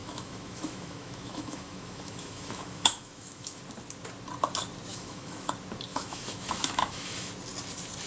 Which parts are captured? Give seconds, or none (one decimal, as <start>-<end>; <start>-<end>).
3.6-4.9; 5.5-5.9; 7.3-8.1